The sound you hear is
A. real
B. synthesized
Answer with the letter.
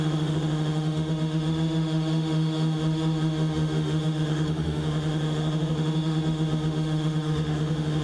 B